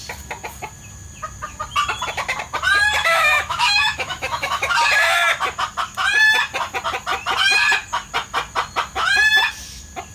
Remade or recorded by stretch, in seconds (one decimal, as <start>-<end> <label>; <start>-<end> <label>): 0.0-3.0 recorded; 3.0-4.7 remade; 4.7-10.1 recorded